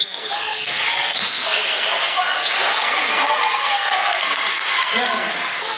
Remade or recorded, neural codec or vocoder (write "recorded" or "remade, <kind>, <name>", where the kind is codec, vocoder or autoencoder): remade, codec, SNAC